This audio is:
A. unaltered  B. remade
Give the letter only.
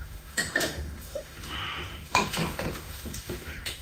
B